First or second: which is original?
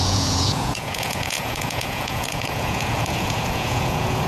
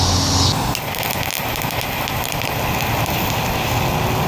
second